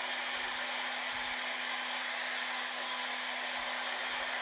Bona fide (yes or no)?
yes